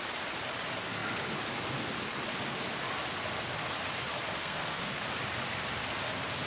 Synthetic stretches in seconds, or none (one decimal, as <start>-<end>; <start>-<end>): 4.4-5.0